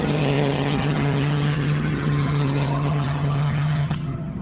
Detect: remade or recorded remade